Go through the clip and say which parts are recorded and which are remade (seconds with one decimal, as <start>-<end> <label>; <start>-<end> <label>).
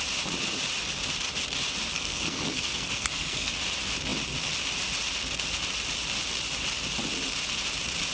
0.0-1.9 recorded; 1.9-3.5 remade; 3.5-8.1 recorded